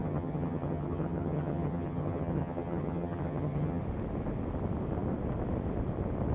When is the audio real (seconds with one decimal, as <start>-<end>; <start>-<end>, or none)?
3.8-6.3